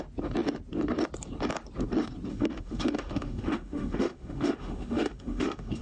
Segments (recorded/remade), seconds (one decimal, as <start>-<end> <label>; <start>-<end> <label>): 0.0-2.3 recorded; 2.3-5.8 remade